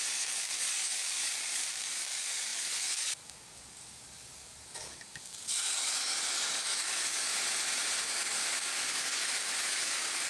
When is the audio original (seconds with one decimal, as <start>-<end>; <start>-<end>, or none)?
7.3-8.0